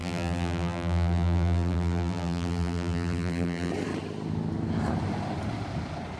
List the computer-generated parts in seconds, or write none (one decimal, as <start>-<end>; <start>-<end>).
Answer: 0.0-3.7